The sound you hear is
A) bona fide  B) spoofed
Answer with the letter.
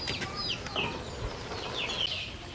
A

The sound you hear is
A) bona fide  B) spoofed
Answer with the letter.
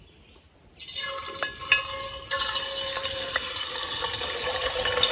A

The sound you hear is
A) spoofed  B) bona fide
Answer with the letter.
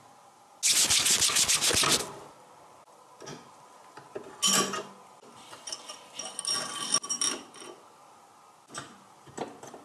B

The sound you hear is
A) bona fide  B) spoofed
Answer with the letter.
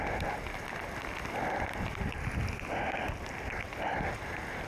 A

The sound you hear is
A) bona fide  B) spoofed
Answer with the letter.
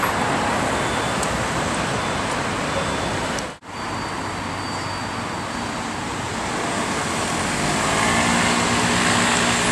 A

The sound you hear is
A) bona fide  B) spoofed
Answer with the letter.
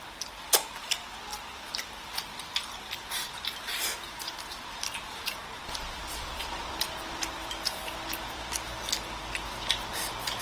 B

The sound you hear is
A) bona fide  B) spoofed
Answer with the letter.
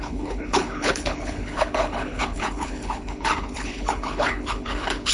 B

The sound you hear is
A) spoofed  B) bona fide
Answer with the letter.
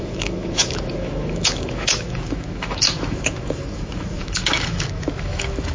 A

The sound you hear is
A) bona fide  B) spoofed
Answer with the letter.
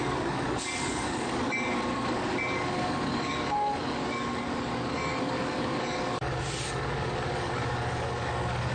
B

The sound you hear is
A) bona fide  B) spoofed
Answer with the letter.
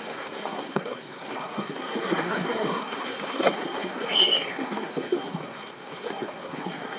B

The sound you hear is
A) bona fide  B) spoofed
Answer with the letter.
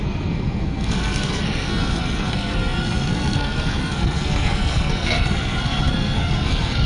B